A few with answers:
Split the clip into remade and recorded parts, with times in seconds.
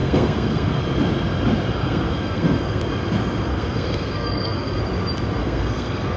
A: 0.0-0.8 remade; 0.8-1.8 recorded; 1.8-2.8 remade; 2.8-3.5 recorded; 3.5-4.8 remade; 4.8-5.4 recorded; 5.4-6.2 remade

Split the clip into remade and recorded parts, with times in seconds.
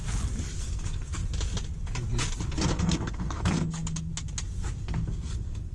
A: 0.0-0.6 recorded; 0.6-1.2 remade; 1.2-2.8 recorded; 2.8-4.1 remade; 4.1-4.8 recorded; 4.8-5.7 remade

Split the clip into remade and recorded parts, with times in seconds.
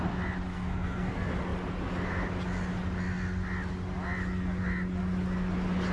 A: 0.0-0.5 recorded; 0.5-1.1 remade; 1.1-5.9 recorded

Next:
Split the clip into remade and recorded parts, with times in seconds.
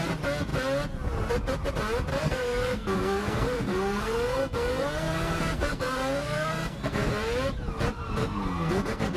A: 0.0-2.1 recorded; 2.1-7.1 remade; 7.1-8.2 recorded; 8.2-9.2 remade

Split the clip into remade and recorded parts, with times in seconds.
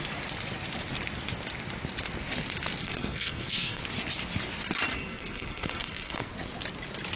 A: 0.0-2.8 recorded; 2.8-3.8 remade; 3.8-4.9 recorded; 4.9-6.3 remade; 6.3-7.2 recorded